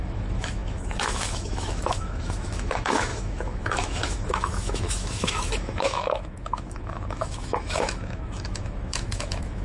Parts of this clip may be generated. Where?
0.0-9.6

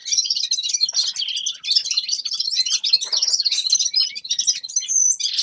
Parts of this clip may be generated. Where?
0.0-0.7

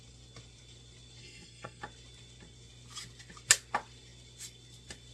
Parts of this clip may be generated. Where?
1.2-1.8

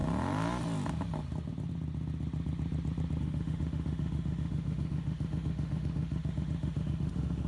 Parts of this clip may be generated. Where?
3.2-7.5

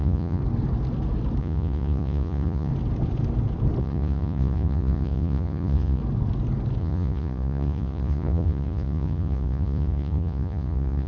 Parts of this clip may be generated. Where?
0.0-0.4; 1.4-2.7; 3.8-6.0; 6.8-11.1

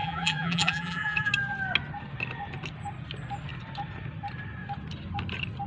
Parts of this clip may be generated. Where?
0.0-1.3

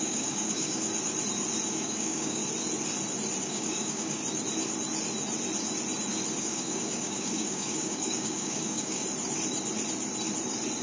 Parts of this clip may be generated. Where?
0.0-0.9; 1.7-2.4; 3.4-4.2; 6.4-9.0

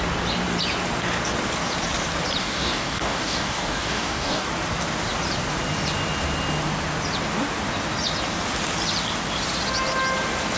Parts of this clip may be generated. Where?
2.4-4.5